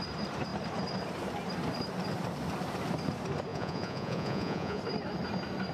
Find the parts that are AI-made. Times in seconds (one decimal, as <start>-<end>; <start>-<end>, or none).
3.5-4.8